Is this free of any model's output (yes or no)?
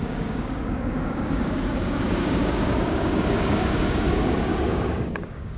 no